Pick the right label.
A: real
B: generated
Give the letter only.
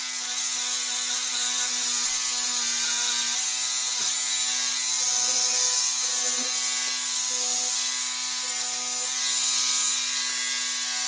A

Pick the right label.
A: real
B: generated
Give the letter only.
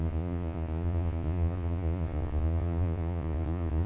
B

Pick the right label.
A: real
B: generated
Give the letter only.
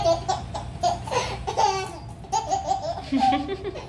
A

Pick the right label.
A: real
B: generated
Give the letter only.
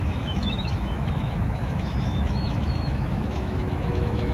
B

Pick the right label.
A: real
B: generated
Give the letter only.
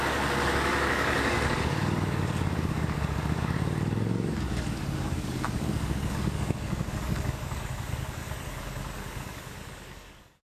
B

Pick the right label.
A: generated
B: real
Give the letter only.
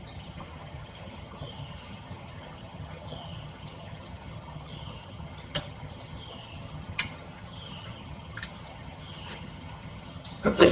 A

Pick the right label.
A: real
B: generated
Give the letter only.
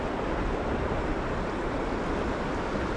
A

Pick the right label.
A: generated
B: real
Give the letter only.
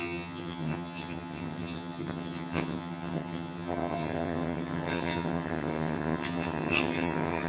A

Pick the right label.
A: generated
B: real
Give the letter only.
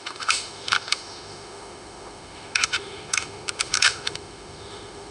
A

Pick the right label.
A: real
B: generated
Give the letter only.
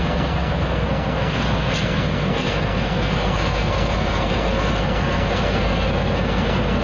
B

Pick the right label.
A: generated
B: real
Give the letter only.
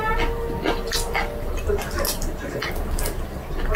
B